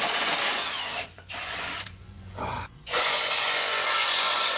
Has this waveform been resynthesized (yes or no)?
yes